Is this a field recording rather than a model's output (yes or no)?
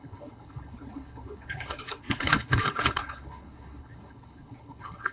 no